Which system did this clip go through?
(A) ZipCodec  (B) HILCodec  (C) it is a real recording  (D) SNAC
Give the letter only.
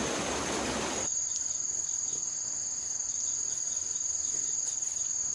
C